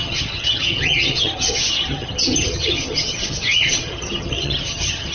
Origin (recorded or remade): remade